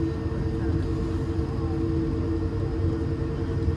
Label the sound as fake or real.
real